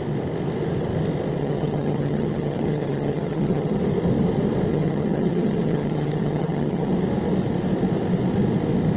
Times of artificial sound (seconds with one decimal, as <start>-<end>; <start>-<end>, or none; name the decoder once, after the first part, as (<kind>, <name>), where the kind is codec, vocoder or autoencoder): 1.4-3.8 (vocoder, HiFi-GAN); 4.7-6.9